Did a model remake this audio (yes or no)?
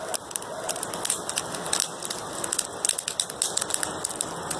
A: no